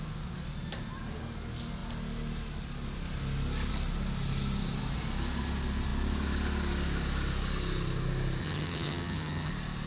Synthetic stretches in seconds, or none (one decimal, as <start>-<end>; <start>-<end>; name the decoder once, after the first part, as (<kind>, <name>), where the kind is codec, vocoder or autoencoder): 8.4-9.5 (vocoder, HiFi-GAN)